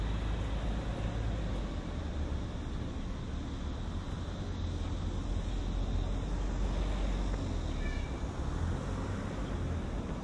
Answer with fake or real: real